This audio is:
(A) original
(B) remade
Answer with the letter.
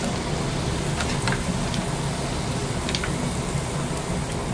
A